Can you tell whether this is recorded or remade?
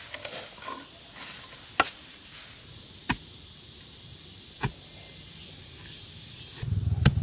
recorded